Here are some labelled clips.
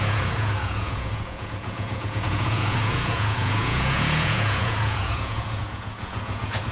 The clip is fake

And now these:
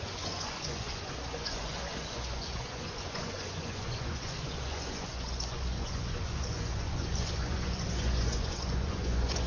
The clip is fake